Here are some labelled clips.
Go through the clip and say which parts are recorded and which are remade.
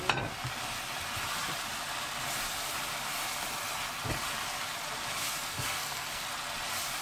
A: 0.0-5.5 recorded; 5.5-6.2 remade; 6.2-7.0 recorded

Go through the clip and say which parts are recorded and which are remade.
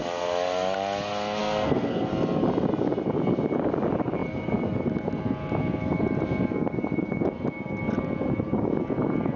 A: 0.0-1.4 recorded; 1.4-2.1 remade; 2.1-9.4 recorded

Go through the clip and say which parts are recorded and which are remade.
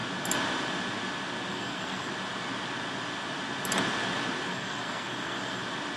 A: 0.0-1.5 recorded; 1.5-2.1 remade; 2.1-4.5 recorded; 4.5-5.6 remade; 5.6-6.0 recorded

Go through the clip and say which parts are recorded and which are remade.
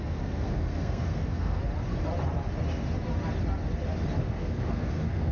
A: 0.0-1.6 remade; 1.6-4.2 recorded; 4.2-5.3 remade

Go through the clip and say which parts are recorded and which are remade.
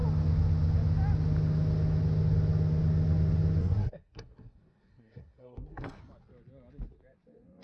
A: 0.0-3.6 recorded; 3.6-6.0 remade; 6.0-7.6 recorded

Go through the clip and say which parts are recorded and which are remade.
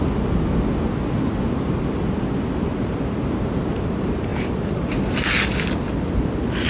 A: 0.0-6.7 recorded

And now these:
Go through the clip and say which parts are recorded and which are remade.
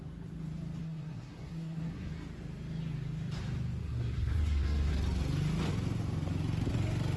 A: 0.0-0.8 recorded; 0.8-2.1 remade; 2.1-3.8 recorded; 3.8-4.9 remade; 4.9-7.2 recorded